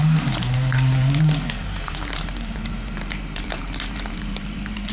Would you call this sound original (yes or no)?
no